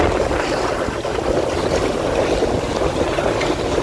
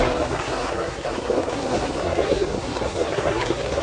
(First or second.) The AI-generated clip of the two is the second